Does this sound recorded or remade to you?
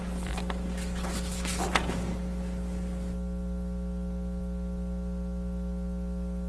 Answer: recorded